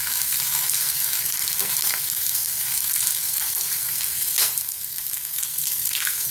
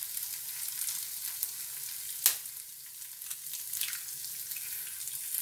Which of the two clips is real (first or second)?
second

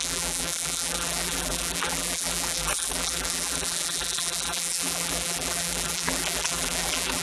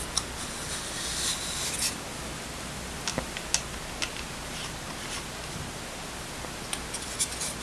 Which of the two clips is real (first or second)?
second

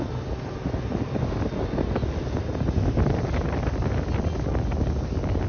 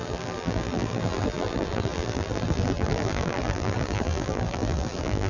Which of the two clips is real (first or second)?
first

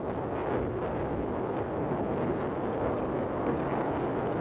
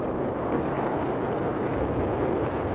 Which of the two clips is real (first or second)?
first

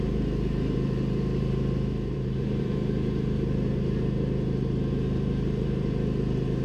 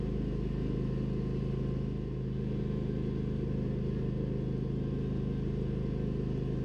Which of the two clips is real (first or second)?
second